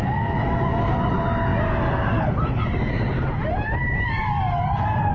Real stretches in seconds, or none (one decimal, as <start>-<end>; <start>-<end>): 0.0-5.1

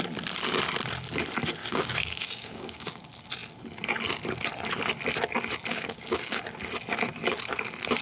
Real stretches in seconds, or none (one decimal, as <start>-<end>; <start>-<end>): 0.0-1.6; 3.0-5.7; 6.4-8.0

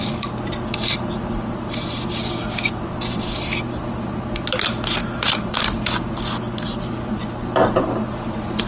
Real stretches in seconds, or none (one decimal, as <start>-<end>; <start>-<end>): 0.0-2.2; 2.8-8.7

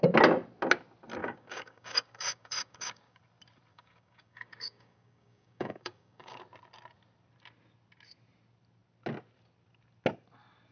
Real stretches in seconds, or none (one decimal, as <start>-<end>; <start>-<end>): 0.0-1.2; 3.2-3.7; 6.4-10.7